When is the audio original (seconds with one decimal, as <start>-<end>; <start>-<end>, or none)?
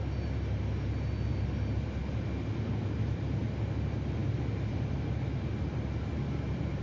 0.0-6.8